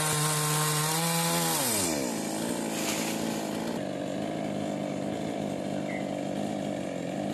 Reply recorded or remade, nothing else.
recorded